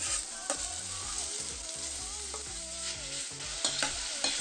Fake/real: real